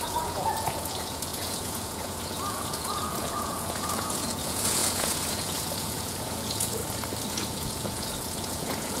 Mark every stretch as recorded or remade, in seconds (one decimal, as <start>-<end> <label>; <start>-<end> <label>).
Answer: 0.0-6.8 remade; 6.8-7.3 recorded; 7.3-9.0 remade